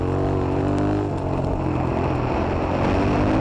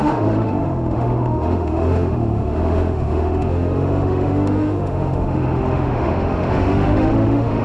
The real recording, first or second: first